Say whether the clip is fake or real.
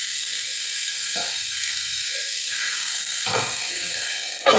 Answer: fake